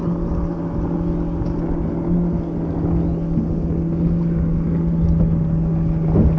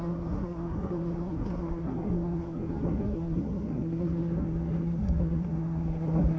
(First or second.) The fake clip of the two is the second